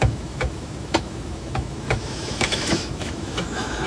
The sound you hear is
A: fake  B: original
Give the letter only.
A